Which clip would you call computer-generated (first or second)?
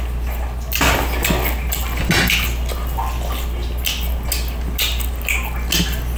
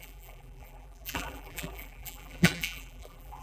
second